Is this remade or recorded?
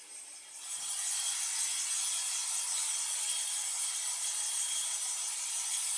recorded